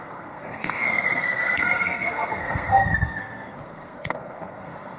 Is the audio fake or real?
fake